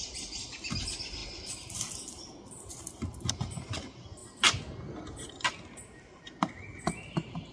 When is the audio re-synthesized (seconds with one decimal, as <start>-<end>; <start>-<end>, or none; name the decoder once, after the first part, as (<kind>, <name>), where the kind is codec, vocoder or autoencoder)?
none